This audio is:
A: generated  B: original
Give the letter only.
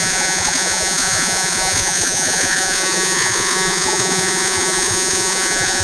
A